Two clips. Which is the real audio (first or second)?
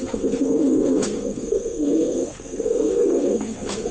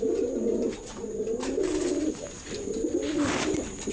second